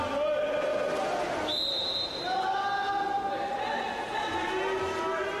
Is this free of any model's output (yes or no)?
yes